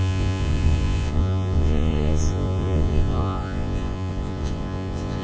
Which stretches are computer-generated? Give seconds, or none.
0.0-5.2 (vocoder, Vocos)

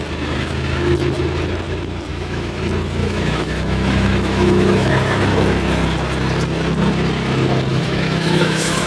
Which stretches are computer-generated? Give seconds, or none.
2.1-2.6 (autoencoder, DAC-VAE); 3.0-4.9; 7.7-8.9

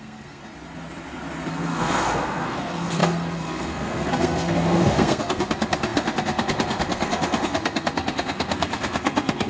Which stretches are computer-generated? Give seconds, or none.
0.0-0.4 (codec, SNAC); 1.5-9.5

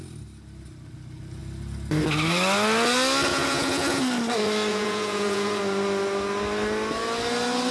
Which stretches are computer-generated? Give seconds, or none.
3.3-4.0 (vocoder, Vocos); 4.7-5.6

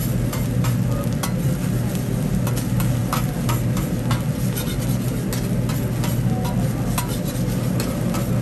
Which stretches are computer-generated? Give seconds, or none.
none

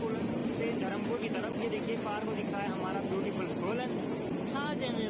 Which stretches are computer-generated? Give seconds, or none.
none